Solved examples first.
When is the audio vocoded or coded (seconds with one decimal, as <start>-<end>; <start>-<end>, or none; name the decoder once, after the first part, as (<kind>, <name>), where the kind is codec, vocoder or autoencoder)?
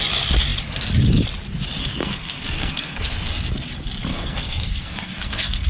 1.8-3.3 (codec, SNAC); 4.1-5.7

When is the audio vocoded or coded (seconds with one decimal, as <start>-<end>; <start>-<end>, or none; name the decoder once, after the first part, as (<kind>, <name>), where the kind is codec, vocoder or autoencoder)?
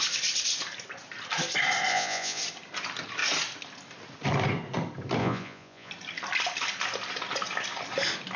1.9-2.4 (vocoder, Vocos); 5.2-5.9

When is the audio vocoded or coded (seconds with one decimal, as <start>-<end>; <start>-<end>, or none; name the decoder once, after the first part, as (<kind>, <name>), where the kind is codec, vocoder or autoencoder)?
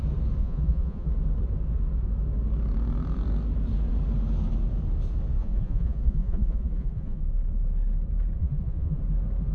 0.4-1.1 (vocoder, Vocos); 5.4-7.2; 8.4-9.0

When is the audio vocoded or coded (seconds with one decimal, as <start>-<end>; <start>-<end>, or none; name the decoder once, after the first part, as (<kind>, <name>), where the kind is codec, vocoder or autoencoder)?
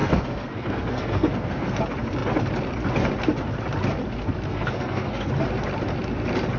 0.0-1.8 (codec, SNAC); 4.5-5.3